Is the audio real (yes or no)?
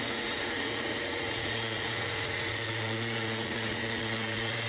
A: no